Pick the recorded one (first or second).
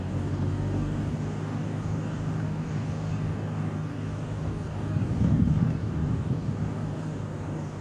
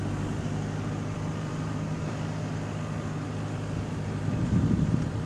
second